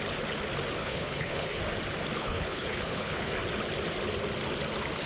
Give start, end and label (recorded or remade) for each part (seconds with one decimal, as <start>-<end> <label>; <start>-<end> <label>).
0.0-0.8 recorded; 0.8-1.6 remade; 1.6-2.2 recorded; 2.2-3.3 remade; 3.3-5.1 recorded